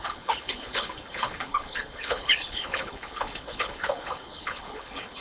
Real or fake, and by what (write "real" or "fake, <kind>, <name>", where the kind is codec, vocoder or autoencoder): fake, codec, HILCodec